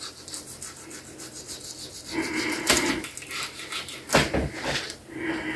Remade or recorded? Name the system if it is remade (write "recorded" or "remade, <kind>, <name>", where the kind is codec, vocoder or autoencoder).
recorded